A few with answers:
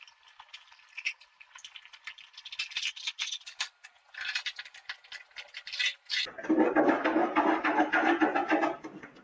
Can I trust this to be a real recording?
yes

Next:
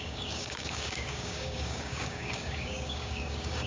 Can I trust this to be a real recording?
no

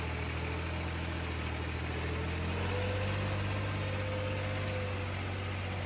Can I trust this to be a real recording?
yes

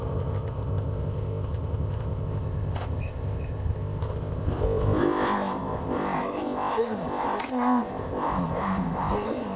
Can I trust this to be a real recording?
no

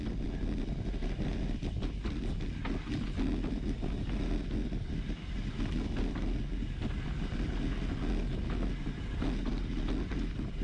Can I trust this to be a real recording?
yes